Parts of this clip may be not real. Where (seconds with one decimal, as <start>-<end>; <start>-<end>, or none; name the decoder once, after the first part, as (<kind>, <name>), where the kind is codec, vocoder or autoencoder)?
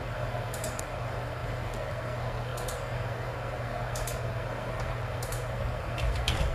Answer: 0.0-6.5 (codec, SNAC)